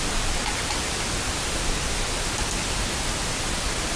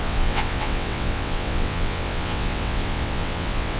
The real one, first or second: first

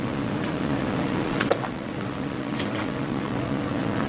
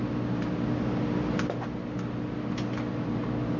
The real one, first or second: second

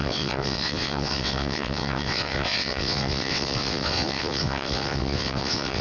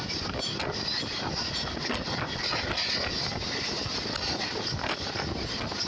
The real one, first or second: second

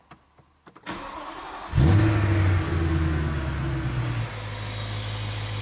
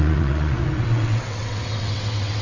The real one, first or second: first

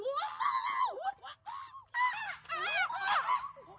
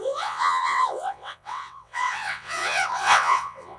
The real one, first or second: first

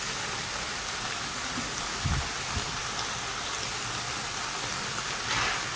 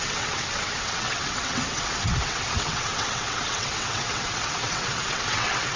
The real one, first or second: first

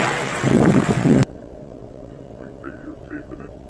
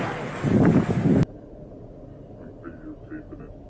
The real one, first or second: second